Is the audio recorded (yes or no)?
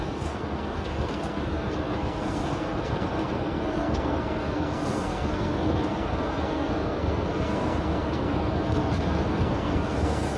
no